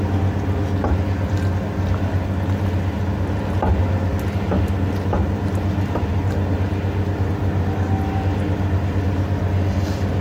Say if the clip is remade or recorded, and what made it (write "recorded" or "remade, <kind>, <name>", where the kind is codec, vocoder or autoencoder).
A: recorded